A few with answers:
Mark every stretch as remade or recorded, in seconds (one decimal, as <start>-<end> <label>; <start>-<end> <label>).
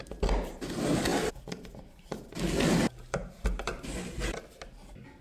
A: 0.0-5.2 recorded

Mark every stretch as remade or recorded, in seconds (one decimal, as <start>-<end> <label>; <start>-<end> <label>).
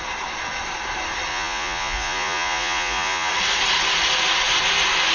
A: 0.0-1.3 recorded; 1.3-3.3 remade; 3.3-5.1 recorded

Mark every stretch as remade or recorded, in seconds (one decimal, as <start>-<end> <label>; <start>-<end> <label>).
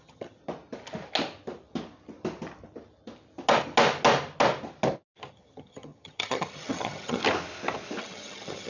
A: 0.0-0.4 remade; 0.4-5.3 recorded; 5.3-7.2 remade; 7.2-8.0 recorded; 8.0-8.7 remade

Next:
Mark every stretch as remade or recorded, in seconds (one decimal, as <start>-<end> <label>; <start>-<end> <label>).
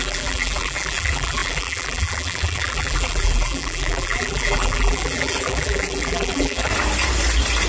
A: 0.0-6.7 remade; 6.7-7.7 recorded